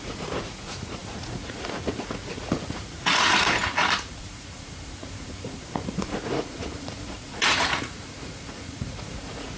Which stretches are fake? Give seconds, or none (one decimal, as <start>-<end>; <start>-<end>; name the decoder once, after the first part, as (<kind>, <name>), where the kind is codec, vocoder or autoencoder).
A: 0.0-9.6 (vocoder, Vocos)